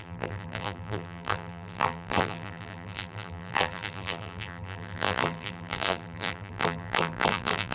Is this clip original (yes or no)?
no